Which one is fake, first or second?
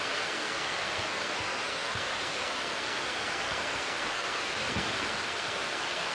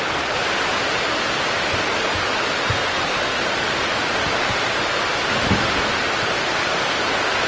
first